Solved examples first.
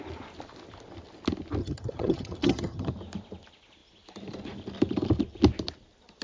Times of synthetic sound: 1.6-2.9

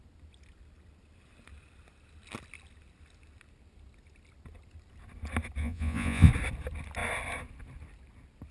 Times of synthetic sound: 5.6-6.3